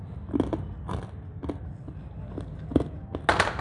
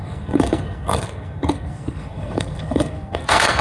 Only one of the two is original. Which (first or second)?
first